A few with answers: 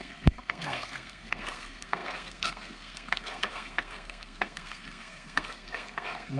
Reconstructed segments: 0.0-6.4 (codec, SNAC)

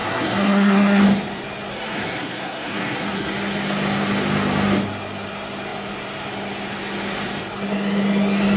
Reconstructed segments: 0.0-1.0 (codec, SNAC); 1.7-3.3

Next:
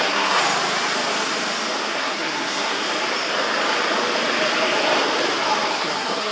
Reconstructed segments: 0.0-0.4 (codec, SNAC); 1.8-2.8; 5.7-6.3

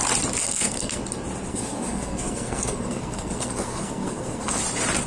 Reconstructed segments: 0.4-1.0 (codec, SNAC); 1.5-4.6

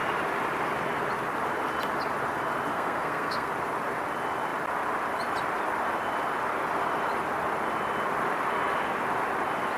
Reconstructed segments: 2.7-3.5 (codec, SNAC)